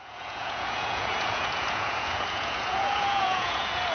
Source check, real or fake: fake